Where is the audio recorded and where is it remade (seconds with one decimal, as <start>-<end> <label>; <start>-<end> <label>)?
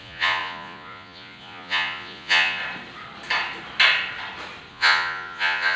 0.0-2.6 remade; 2.6-4.7 recorded; 4.7-5.8 remade